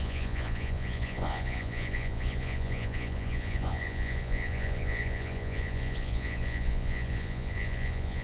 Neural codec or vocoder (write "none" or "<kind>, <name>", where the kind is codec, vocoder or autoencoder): vocoder, Vocos